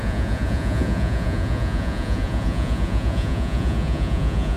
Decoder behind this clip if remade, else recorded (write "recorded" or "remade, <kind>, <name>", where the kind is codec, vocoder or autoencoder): remade, vocoder, Vocos